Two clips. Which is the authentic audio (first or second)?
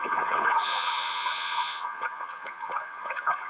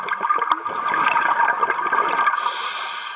second